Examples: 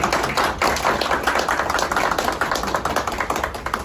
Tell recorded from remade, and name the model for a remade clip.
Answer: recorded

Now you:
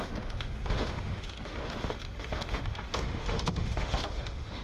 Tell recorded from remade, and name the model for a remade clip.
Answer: remade, autoencoder, DAC-VAE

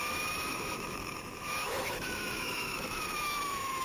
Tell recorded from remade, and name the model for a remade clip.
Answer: remade, autoencoder, DAC-VAE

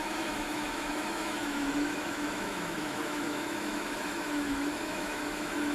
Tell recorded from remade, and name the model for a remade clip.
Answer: remade, autoencoder, DAC-VAE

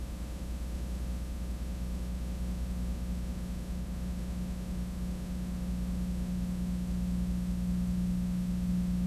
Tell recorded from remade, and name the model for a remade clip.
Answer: remade, autoencoder, DAC-VAE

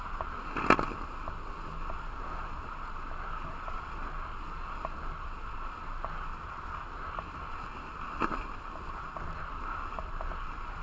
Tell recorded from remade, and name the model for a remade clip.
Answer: recorded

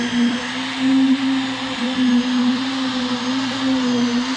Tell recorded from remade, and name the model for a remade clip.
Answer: recorded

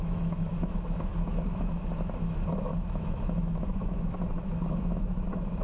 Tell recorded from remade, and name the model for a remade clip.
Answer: remade, autoencoder, DAC-VAE